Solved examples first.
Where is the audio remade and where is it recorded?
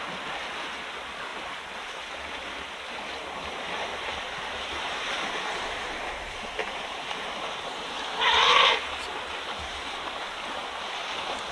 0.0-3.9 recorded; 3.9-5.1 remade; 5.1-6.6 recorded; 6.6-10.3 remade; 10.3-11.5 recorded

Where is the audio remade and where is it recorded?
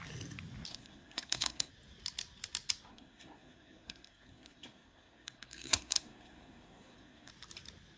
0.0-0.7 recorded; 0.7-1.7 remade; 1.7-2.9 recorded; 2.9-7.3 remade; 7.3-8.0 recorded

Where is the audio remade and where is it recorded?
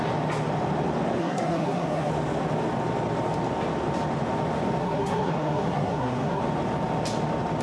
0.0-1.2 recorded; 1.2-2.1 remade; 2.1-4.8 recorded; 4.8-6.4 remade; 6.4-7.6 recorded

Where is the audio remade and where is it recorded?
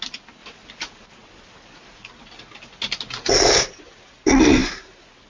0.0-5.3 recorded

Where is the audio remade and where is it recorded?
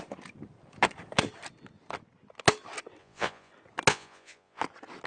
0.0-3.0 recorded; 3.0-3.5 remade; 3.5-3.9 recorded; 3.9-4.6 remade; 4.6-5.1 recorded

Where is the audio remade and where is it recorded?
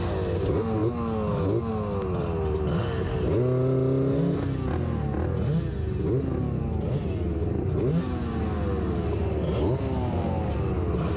0.0-11.2 recorded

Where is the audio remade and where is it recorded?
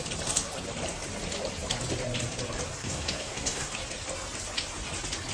0.0-2.8 recorded; 2.8-3.7 remade; 3.7-5.3 recorded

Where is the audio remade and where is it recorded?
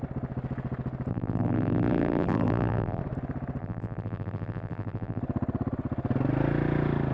0.0-1.1 recorded; 1.1-3.0 remade; 3.0-3.6 recorded; 3.6-5.2 remade; 5.2-7.1 recorded